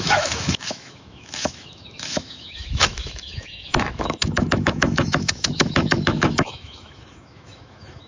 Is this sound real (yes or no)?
no